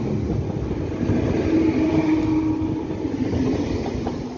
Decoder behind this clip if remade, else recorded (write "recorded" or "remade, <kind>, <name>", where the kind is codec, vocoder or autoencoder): recorded